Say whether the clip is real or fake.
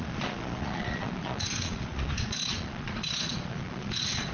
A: fake